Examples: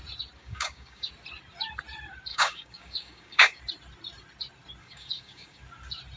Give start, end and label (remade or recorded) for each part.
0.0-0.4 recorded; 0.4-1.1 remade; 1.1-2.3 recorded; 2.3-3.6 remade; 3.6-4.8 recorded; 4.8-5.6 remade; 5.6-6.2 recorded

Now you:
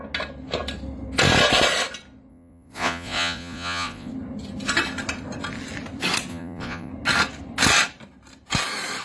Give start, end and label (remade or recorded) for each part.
0.0-2.3 recorded; 2.3-4.1 remade; 4.1-6.3 recorded; 6.3-6.9 remade; 6.9-9.0 recorded